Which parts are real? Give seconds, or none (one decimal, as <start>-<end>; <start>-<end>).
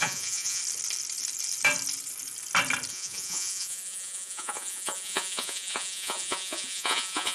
0.6-2.9